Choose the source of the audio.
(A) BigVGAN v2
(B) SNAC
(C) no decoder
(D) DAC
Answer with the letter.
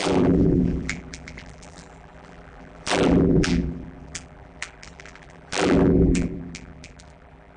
A